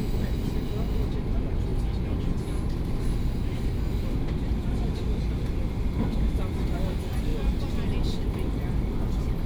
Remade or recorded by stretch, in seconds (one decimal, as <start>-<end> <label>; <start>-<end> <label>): 0.0-9.5 recorded